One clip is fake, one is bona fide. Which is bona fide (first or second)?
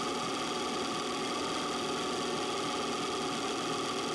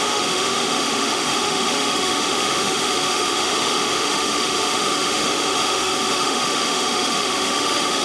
first